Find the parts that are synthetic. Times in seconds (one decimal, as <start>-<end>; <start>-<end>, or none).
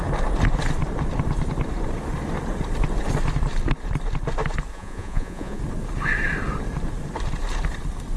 4.7-5.6